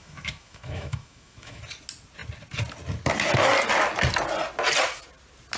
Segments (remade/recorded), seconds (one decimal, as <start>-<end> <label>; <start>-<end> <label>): 0.0-1.6 remade; 1.6-5.6 recorded